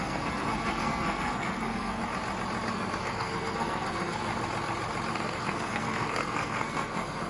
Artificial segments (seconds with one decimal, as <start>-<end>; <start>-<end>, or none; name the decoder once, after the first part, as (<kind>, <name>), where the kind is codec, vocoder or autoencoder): 0.0-2.0 (codec, SNAC); 2.7-4.3; 5.1-7.3